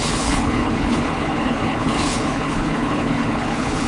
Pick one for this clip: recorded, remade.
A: remade